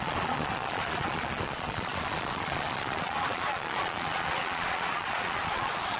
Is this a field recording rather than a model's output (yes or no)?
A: no